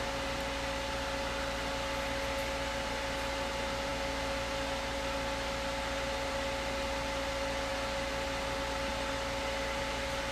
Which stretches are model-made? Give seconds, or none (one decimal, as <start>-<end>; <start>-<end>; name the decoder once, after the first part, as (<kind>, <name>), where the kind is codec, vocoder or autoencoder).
none